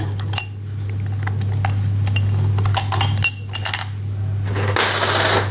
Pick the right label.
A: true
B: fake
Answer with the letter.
A